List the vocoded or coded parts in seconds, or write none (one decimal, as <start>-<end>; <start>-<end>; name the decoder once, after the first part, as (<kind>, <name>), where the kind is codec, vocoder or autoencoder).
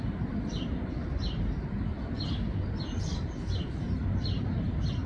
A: none